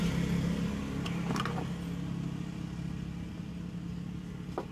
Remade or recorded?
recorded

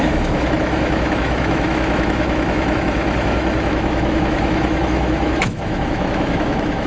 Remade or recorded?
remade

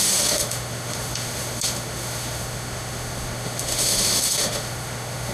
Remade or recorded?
remade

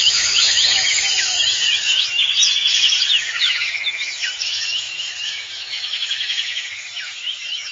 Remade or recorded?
remade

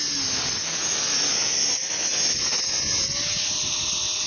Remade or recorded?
recorded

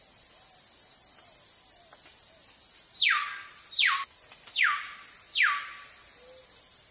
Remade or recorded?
recorded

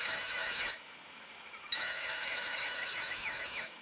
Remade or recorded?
remade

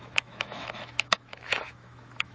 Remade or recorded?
remade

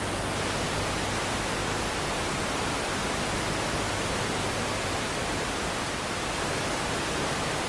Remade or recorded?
recorded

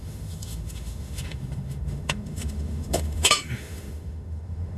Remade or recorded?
remade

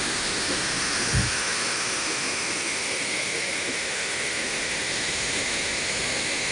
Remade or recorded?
remade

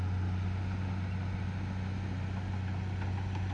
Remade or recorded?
recorded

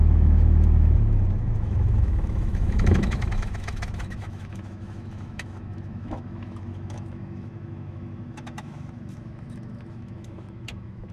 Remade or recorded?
remade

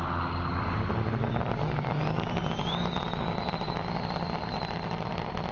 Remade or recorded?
recorded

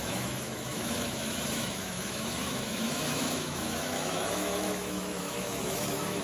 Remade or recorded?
remade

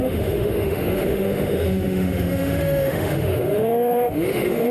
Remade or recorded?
remade